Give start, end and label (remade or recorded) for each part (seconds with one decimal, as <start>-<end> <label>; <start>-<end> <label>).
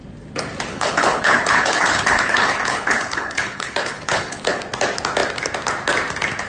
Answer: 0.0-0.7 recorded; 0.7-4.6 remade; 4.6-6.5 recorded